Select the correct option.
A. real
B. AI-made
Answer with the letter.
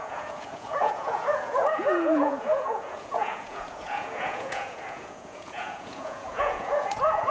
B